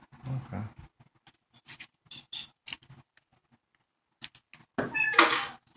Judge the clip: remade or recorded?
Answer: recorded